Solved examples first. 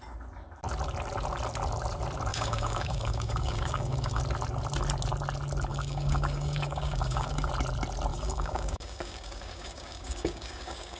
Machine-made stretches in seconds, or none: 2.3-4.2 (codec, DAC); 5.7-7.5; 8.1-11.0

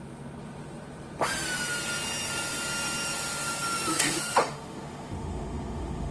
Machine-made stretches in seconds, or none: 3.9-6.1 (autoencoder, DAC-VAE)

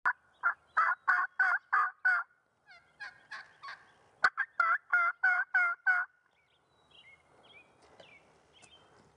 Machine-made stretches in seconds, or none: 4.9-5.9 (vocoder, BigVGAN v2)